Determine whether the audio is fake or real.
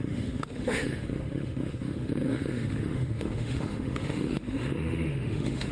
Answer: fake